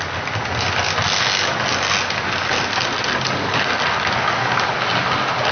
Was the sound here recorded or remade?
recorded